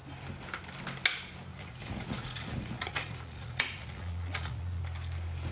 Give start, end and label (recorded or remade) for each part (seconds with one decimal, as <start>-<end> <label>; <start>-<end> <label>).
0.0-1.5 recorded; 1.5-4.8 remade; 4.8-5.5 recorded